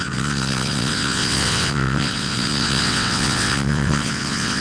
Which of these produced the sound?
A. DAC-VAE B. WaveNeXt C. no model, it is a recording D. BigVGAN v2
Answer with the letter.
B